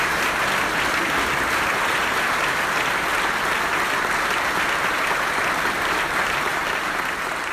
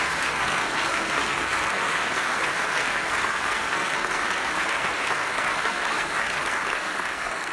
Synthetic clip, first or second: second